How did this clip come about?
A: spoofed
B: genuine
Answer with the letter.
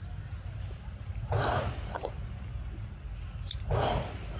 B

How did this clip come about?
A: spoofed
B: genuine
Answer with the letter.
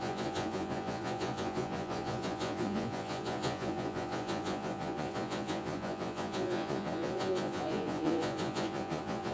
A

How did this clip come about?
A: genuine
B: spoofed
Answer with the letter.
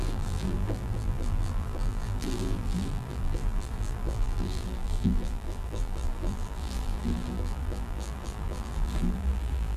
B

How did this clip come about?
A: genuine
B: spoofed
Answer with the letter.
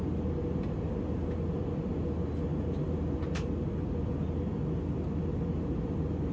A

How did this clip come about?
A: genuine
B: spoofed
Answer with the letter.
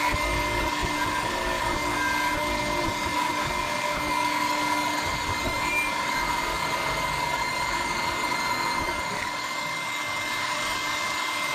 B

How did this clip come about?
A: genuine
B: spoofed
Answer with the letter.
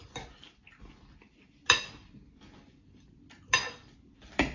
A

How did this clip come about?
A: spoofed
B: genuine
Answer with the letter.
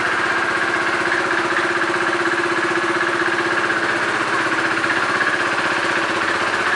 B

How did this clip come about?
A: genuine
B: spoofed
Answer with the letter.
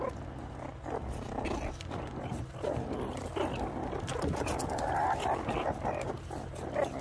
A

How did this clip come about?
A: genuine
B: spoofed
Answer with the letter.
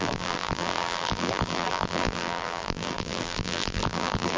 B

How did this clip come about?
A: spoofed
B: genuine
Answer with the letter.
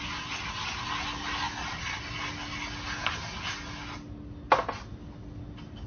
B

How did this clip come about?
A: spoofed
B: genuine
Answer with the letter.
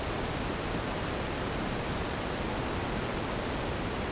B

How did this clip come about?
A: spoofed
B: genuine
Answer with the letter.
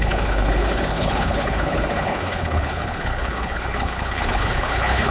A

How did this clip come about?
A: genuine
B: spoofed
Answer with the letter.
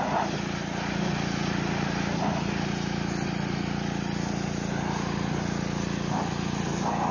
A